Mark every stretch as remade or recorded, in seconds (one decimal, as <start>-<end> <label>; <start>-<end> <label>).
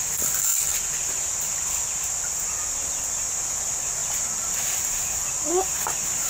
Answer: 0.0-6.3 recorded